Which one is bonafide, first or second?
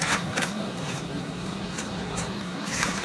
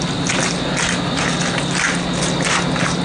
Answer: second